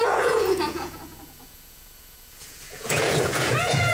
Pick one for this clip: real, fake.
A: fake